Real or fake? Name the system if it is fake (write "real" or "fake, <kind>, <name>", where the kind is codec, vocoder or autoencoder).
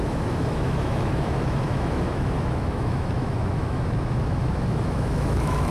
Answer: fake, autoencoder, DAC-VAE